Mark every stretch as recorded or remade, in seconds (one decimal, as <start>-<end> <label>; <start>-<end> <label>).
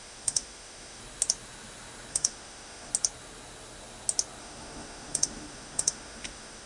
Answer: 0.0-1.0 remade; 1.0-2.1 recorded; 2.1-2.9 remade; 2.9-4.4 recorded; 4.4-6.7 remade